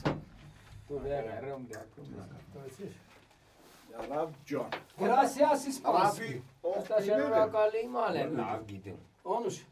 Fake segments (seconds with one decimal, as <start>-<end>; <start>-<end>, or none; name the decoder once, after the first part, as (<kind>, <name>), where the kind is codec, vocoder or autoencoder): 1.8-2.4 (vocoder, BigVGAN v2); 4.4-6.4; 8.0-9.7